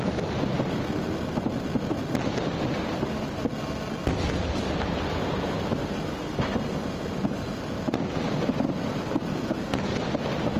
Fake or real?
real